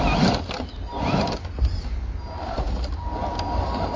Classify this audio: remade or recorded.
recorded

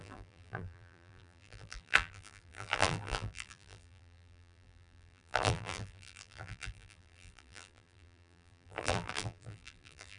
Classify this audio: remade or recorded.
remade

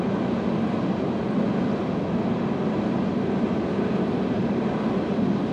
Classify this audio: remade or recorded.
recorded